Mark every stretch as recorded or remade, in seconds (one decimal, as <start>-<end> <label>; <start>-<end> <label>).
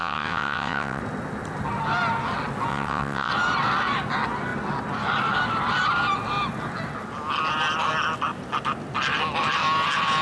0.0-1.0 remade; 1.0-2.7 recorded; 2.7-3.3 remade; 3.3-10.2 recorded